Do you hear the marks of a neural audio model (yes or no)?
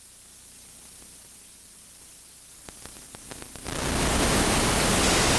no